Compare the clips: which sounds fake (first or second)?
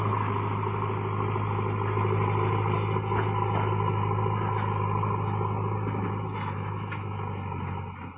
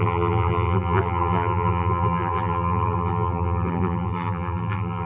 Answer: second